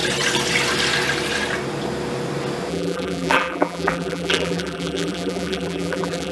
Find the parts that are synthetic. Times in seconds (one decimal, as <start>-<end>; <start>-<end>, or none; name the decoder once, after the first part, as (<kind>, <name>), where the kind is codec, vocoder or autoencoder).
2.7-6.3 (vocoder, BigVGAN v2)